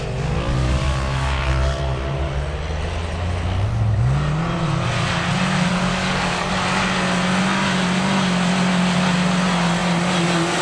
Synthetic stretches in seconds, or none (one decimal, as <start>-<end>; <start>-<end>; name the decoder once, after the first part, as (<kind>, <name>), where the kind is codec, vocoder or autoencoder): 0.6-1.5 (codec, DAC); 5.9-6.5